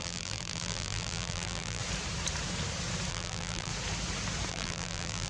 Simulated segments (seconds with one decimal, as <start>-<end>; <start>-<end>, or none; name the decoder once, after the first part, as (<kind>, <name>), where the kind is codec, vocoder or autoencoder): 0.0-1.8 (vocoder, BigVGAN v2); 3.1-3.7; 4.5-5.3